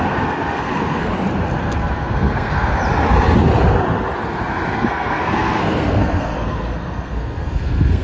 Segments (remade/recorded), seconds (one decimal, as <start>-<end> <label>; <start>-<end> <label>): 0.0-1.1 remade; 1.1-1.6 recorded; 1.6-2.8 remade; 2.8-4.7 recorded; 4.7-8.0 remade